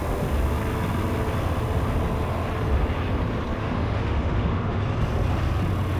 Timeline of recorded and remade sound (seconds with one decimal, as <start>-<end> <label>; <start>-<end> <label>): 0.0-3.6 recorded; 3.6-4.8 remade; 4.8-6.0 recorded